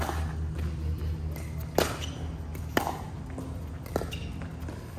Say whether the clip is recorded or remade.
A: recorded